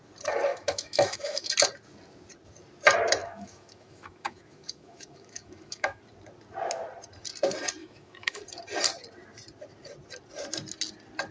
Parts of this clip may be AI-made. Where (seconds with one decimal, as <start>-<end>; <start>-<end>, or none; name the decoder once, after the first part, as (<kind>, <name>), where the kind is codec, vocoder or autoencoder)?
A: 0.5-1.5 (autoencoder, DAC-VAE); 3.2-6.0; 7.8-8.4